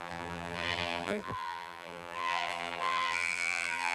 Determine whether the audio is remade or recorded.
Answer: remade